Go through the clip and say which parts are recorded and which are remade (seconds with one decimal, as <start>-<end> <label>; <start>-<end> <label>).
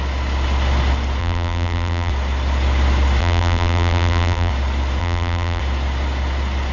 0.0-1.2 recorded; 1.2-2.1 remade; 2.1-3.2 recorded; 3.2-4.5 remade; 4.5-5.0 recorded; 5.0-5.6 remade; 5.6-6.7 recorded